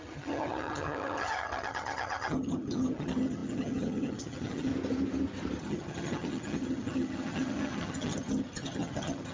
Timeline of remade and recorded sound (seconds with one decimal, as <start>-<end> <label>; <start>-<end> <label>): 0.0-4.7 remade; 4.7-5.6 recorded; 5.6-9.3 remade